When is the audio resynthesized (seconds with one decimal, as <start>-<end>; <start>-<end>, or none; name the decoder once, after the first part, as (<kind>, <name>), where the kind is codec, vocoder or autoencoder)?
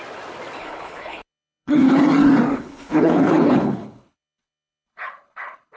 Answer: 0.6-2.0 (codec, HILCodec); 2.5-5.8